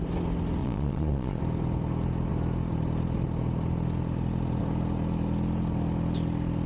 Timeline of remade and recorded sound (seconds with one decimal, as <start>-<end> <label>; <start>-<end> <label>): 0.0-0.6 recorded; 0.6-1.4 remade; 1.4-6.7 recorded